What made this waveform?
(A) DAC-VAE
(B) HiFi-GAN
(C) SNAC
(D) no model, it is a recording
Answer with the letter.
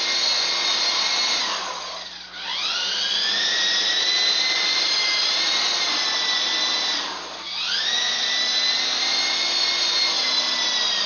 D